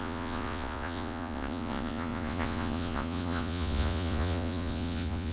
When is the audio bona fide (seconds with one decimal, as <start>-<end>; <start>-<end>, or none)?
none

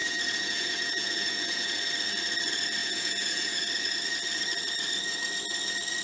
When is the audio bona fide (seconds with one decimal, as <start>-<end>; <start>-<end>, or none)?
1.8-2.8; 3.7-6.0